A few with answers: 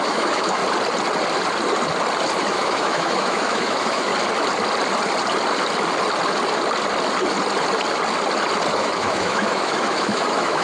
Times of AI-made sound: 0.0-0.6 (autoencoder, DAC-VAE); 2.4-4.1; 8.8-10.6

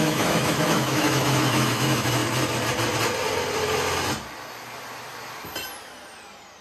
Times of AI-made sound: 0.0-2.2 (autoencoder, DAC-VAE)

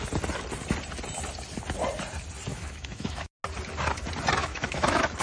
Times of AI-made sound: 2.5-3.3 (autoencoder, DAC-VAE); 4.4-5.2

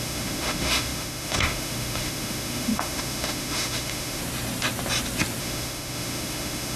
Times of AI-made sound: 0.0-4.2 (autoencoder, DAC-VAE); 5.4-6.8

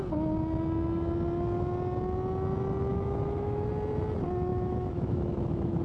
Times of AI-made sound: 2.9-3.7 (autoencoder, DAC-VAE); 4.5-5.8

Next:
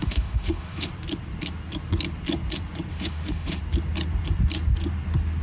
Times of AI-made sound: 0.0-0.9 (autoencoder, DAC-VAE); 2.9-3.6